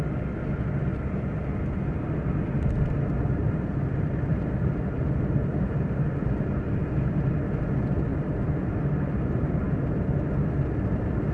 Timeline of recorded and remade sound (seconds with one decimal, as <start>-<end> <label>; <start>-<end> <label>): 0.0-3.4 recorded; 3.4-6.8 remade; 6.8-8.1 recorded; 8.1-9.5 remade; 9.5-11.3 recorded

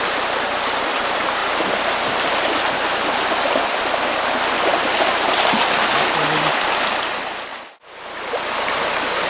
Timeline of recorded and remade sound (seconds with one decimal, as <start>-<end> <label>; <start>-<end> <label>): 0.0-9.3 recorded

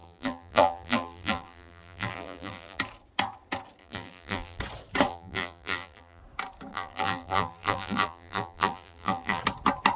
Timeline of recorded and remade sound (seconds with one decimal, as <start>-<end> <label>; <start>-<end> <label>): 0.0-2.8 remade; 2.8-3.8 recorded; 3.8-4.6 remade; 4.6-5.1 recorded; 5.1-6.2 remade; 6.2-6.7 recorded; 6.7-9.4 remade; 9.4-10.0 recorded